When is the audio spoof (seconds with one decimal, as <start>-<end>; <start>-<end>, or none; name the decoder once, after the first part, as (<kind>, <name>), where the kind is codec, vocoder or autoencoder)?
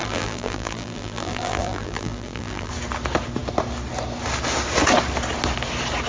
0.0-2.7 (vocoder, BigVGAN v2)